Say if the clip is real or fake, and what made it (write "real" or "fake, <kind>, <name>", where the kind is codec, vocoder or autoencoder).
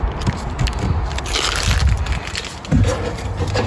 real